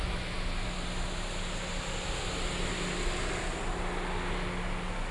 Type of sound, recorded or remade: recorded